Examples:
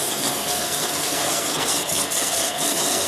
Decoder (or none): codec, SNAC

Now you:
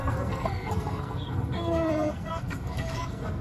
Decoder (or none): codec, SNAC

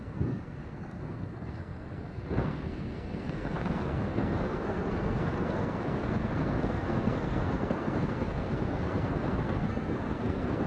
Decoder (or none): codec, SNAC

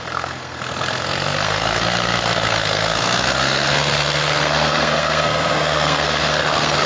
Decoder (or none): codec, SNAC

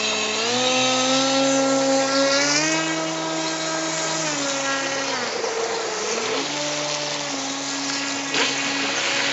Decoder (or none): none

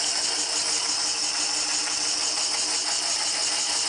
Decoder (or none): none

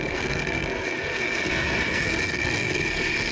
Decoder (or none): codec, SNAC